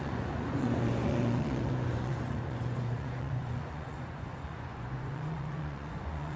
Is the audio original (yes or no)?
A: no